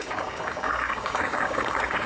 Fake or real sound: fake